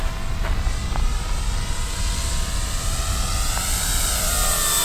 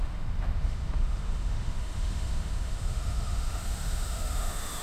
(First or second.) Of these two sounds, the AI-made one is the second